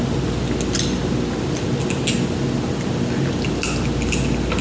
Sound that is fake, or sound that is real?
real